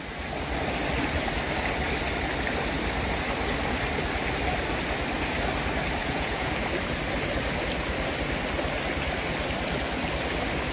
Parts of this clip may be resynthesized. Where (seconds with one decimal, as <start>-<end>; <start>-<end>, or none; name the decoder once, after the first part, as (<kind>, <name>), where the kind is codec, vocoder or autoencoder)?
6.0-6.5 (vocoder, Vocos)